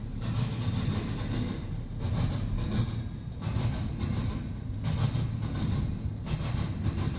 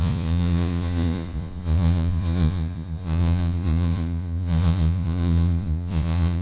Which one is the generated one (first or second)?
second